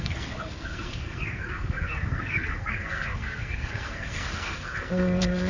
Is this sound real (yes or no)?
no